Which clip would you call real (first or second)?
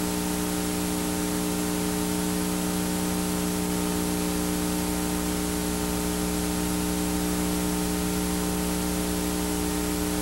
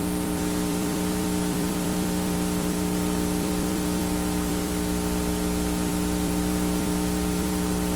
first